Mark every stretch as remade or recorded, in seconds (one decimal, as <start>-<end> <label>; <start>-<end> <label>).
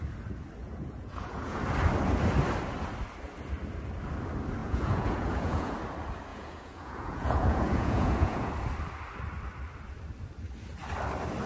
0.0-0.6 recorded; 0.6-1.6 remade; 1.6-4.6 recorded; 4.6-5.7 remade; 5.7-6.3 recorded; 6.3-8.5 remade; 8.5-11.5 recorded